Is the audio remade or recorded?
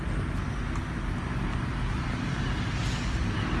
recorded